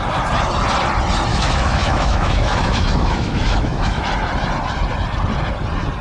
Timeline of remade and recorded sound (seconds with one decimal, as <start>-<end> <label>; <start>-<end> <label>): 0.0-1.3 recorded; 1.3-4.1 remade; 4.1-6.0 recorded